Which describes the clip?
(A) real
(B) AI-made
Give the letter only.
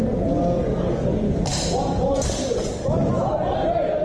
A